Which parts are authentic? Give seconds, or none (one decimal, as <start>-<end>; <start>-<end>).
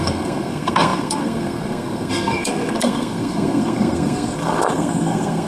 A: none